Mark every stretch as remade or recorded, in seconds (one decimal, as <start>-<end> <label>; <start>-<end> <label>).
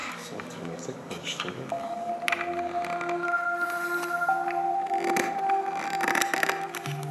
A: 0.0-2.1 remade; 2.1-7.1 recorded